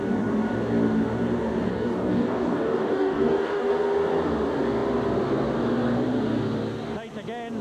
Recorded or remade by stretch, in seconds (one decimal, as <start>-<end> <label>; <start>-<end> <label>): 0.0-1.7 recorded; 1.7-3.7 remade; 3.7-7.6 recorded